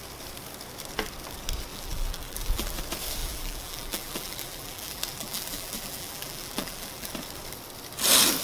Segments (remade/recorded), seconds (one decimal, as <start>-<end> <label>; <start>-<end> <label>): 0.0-1.7 recorded; 1.7-2.8 remade; 2.8-3.2 recorded; 3.2-7.1 remade; 7.1-8.4 recorded